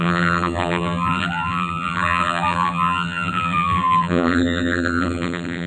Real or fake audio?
fake